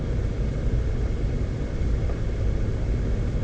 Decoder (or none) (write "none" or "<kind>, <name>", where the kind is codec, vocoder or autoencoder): none